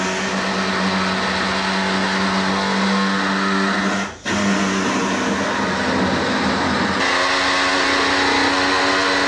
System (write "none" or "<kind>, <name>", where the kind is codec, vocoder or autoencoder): none